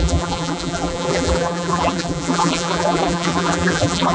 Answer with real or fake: fake